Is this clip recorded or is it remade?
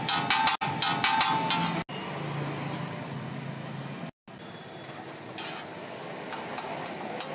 recorded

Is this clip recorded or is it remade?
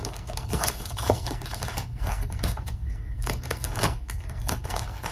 remade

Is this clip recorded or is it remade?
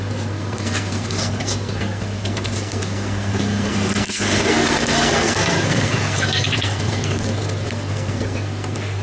remade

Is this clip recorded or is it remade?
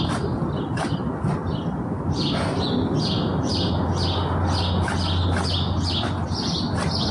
recorded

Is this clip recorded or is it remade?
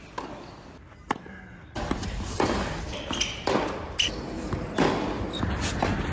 recorded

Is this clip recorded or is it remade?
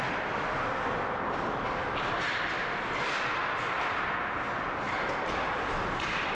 recorded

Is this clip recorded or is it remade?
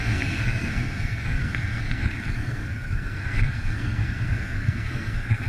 remade